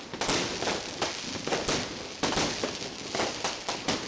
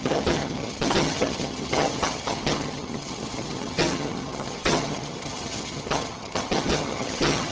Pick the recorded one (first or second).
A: first